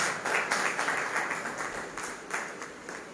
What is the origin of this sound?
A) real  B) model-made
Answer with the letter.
A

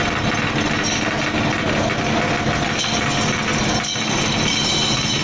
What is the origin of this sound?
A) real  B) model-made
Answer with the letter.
A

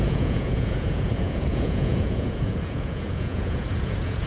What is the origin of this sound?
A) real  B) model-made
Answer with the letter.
B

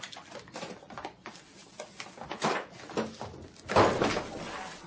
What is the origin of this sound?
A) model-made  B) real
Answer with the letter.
B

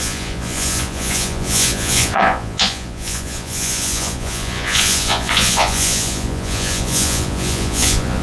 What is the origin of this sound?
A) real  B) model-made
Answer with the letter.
B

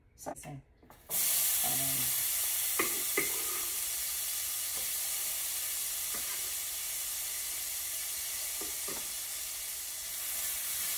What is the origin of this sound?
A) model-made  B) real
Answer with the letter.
B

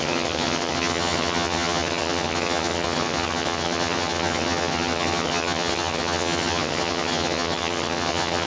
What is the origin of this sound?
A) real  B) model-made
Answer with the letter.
B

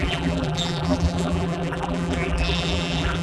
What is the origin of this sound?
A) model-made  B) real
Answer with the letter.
A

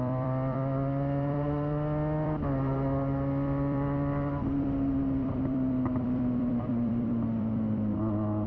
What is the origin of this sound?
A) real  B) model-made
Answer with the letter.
B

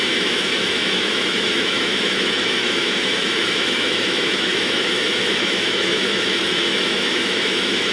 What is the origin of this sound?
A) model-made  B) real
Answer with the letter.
A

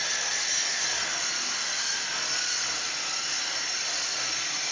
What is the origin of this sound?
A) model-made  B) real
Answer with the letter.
B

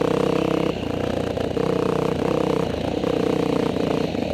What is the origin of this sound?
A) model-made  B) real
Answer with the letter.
B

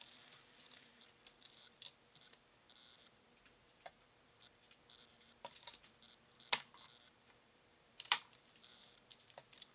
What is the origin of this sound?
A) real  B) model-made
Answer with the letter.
B